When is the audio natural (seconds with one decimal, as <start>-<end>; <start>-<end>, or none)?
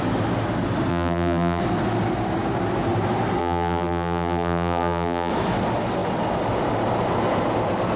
0.0-0.9; 1.6-3.4; 5.3-8.0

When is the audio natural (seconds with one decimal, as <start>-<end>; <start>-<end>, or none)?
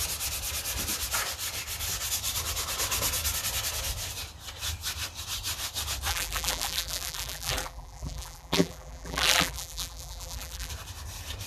0.0-6.1; 10.7-11.5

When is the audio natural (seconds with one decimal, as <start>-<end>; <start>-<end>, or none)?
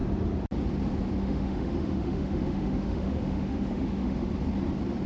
0.0-1.2; 4.3-5.1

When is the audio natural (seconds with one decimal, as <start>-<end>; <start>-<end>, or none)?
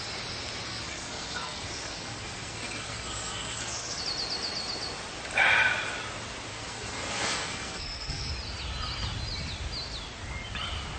0.0-0.7; 4.0-6.5; 8.3-11.0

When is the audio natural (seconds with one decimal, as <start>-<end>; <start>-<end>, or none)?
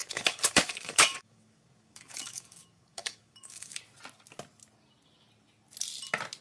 3.8-6.4